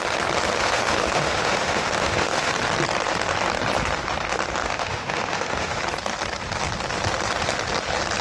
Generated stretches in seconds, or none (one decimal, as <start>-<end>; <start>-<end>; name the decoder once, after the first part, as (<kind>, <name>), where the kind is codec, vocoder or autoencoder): 0.6-2.5 (autoencoder, DAC-VAE); 4.6-5.8